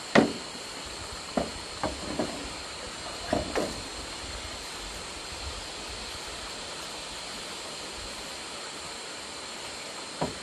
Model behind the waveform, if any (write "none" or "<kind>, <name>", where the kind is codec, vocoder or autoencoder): none